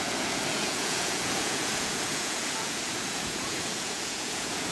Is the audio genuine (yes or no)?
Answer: no